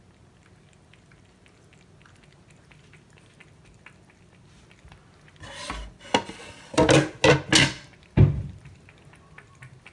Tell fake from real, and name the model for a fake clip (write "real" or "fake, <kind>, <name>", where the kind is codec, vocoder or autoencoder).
real